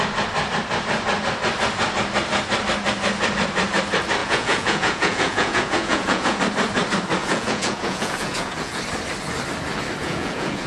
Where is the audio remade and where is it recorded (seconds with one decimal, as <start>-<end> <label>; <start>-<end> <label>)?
0.0-4.2 recorded; 4.2-6.4 remade; 6.4-7.2 recorded; 7.2-8.8 remade; 8.8-10.0 recorded; 10.0-10.7 remade